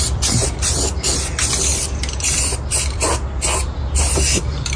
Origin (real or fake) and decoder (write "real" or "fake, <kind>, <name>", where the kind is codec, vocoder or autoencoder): real